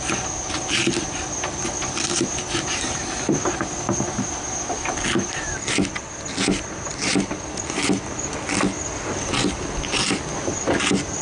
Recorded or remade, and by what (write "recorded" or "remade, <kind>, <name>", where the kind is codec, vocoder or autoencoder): recorded